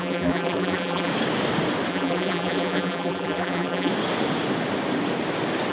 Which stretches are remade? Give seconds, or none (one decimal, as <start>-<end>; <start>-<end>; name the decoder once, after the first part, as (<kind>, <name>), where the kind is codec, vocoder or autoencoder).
0.0-1.1 (vocoder, BigVGAN v2); 1.9-3.9